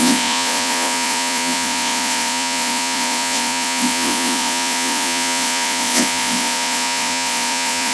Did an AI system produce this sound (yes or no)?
yes